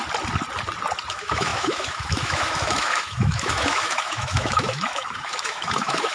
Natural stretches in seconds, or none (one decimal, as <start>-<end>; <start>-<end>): 0.0-1.1

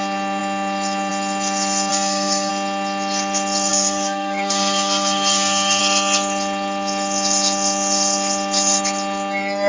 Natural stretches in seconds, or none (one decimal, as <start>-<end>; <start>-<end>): 0.0-1.9; 2.5-3.7; 5.8-9.7